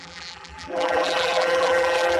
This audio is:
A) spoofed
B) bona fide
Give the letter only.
A